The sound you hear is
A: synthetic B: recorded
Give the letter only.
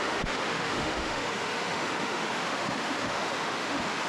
A